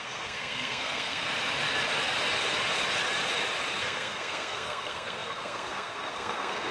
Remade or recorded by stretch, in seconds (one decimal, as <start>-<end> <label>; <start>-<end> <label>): 0.0-1.3 remade; 1.3-3.8 recorded; 3.8-6.7 remade